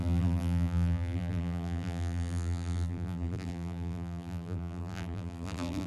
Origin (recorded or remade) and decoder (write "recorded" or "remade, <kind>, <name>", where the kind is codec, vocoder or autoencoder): remade, vocoder, BigVGAN v2